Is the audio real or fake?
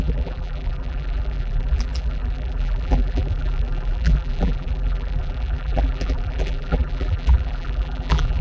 fake